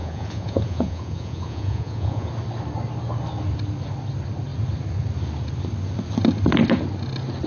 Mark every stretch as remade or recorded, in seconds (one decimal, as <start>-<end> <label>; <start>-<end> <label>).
0.0-2.3 remade; 2.3-7.5 recorded